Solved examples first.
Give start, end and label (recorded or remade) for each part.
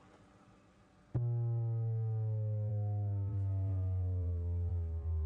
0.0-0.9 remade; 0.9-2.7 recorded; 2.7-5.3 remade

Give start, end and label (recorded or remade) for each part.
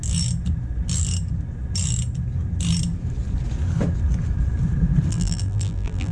0.0-5.1 recorded; 5.1-6.1 remade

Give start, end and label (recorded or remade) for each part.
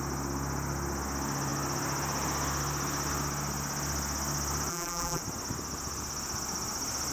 0.0-4.7 recorded; 4.7-5.2 remade; 5.2-7.1 recorded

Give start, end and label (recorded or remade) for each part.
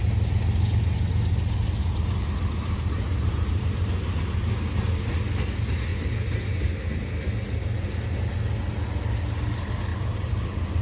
0.0-1.8 recorded; 1.8-4.1 remade; 4.1-9.9 recorded; 9.9-10.8 remade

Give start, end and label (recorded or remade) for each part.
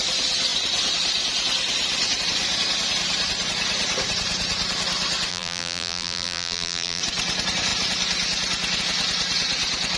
0.0-5.3 recorded; 5.3-7.0 remade; 7.0-10.0 recorded